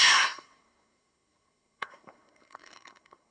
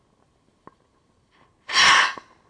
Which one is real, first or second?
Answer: second